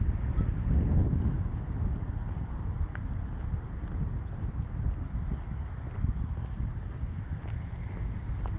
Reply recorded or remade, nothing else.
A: recorded